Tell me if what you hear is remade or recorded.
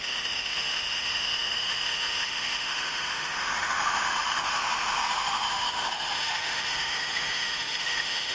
remade